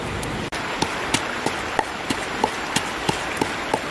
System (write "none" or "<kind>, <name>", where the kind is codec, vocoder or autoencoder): none